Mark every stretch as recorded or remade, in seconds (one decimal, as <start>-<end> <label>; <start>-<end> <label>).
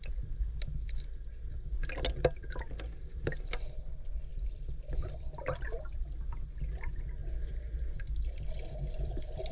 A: 0.0-4.3 recorded; 4.3-6.1 remade; 6.1-9.5 recorded